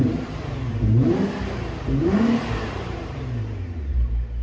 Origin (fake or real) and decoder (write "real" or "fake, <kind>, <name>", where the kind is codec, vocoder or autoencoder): fake, vocoder, BigVGAN v2